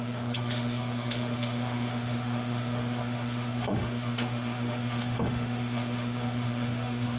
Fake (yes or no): yes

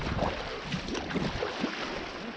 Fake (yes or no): no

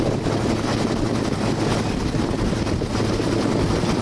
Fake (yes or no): no